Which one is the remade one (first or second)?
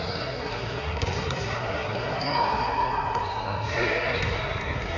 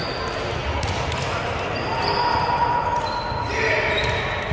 first